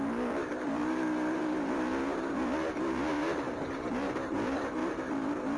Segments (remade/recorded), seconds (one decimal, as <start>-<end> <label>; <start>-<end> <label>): 0.0-5.6 remade